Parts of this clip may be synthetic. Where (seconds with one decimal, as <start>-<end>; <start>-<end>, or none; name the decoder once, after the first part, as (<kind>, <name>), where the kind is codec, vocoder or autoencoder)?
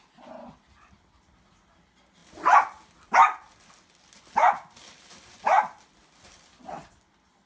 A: none